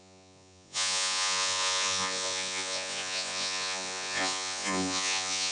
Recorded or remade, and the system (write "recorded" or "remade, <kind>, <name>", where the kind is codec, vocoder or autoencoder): remade, vocoder, Vocos